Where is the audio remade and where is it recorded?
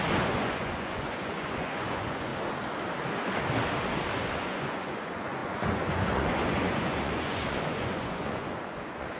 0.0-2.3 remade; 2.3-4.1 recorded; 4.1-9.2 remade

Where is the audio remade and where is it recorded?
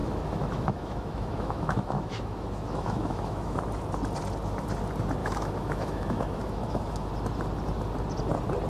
0.0-3.6 remade; 3.6-5.2 recorded; 5.2-7.1 remade; 7.1-8.7 recorded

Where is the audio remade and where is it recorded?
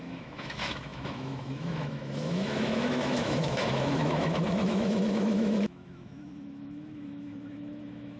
0.0-8.2 remade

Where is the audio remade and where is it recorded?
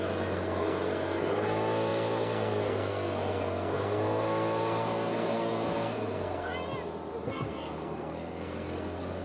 0.0-6.5 remade; 6.5-7.2 recorded; 7.2-9.2 remade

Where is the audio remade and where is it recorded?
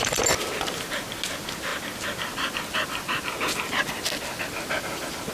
0.0-5.3 recorded